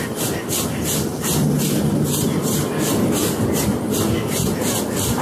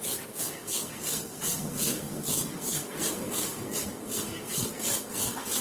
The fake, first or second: second